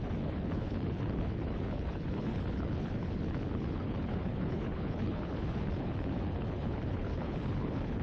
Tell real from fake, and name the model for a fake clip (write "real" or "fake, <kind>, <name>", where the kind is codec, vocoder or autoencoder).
fake, codec, HILCodec